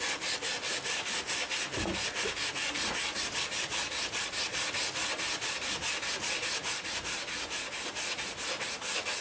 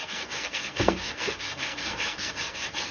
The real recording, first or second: first